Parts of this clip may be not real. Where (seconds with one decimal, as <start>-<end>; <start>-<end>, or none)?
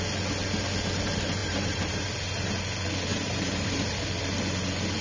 1.4-2.5; 3.1-3.7